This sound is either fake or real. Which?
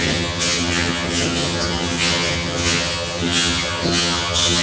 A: fake